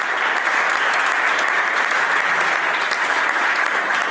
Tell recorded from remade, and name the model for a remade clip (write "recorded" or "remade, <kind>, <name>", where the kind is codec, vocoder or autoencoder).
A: recorded